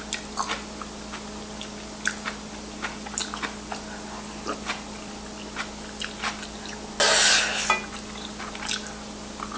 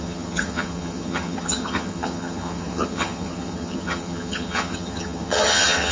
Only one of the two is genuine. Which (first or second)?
first